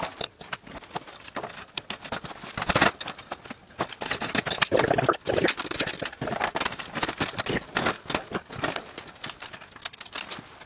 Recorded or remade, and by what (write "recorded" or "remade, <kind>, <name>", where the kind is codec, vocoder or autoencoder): recorded